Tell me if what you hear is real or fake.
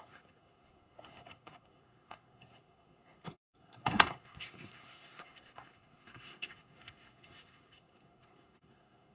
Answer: fake